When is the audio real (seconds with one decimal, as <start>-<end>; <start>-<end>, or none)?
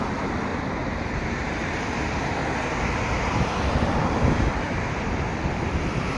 0.5-1.0; 2.4-6.2